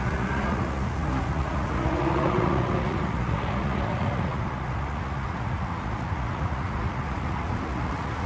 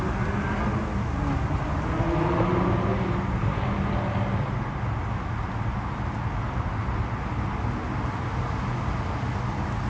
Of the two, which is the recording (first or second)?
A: second